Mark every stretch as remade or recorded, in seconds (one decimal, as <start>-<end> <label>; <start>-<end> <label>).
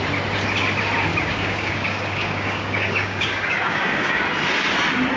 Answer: 0.0-1.1 recorded; 1.1-4.2 remade; 4.2-5.2 recorded